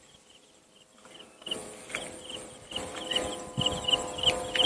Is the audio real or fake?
real